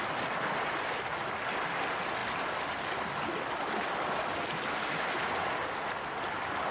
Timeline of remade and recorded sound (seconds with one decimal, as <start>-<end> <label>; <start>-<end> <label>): 0.0-6.7 recorded